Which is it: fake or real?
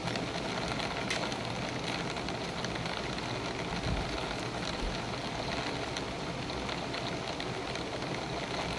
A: real